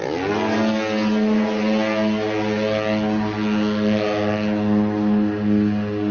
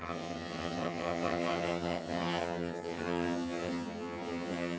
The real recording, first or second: first